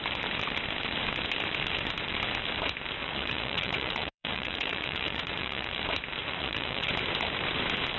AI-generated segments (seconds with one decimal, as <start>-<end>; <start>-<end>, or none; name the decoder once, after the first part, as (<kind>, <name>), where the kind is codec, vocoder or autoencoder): 3.0-5.8 (vocoder, Vocos); 6.2-6.9

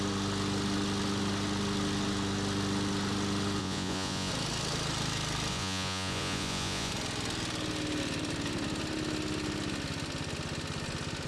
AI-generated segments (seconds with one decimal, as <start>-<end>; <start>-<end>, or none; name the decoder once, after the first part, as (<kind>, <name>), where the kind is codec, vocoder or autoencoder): 3.6-4.3 (vocoder, Vocos); 5.5-6.9

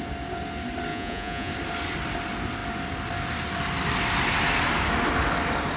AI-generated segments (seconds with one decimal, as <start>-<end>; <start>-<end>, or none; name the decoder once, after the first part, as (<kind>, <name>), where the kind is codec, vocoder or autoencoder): 0.9-1.5 (vocoder, Vocos)